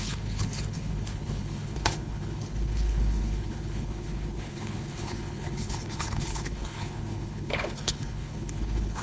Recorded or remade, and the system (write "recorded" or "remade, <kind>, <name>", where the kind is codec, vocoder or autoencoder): remade, codec, HILCodec